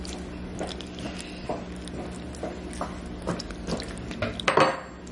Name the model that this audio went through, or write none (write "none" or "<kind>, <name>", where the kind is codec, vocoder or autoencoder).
none